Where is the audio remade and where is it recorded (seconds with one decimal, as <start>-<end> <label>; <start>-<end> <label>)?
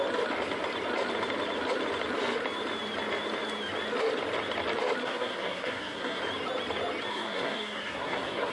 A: 0.0-5.0 recorded; 5.0-6.2 remade; 6.2-7.1 recorded; 7.1-8.5 remade